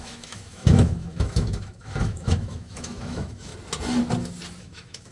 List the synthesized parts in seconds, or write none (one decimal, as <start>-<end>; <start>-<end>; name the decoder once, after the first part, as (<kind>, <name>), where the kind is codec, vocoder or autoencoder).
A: 0.0-3.5 (autoencoder, DAC-VAE); 4.6-5.1